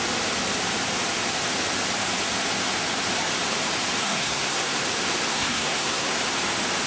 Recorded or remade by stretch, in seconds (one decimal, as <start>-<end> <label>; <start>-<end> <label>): 0.0-4.0 recorded; 4.0-4.8 remade; 4.8-5.3 recorded; 5.3-6.2 remade; 6.2-6.9 recorded